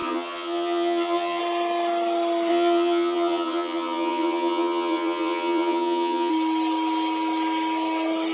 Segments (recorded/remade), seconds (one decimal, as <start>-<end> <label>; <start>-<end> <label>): 0.0-1.4 remade; 1.4-2.5 recorded; 2.5-6.3 remade; 6.3-8.3 recorded